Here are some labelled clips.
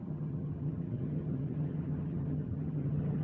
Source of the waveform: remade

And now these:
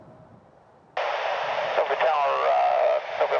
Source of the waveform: recorded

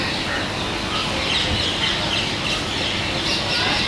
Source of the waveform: recorded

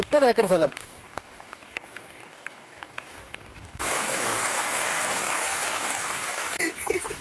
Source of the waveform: remade